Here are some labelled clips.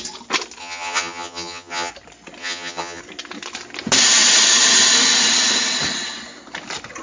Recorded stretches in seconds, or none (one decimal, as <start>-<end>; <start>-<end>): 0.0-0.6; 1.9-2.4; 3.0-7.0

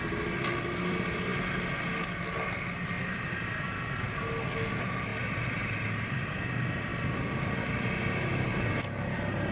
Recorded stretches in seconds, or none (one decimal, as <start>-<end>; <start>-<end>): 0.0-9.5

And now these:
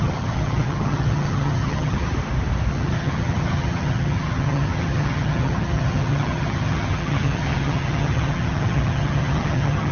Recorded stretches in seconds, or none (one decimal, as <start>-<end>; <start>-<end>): 2.1-2.7